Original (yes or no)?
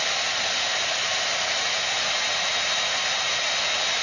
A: yes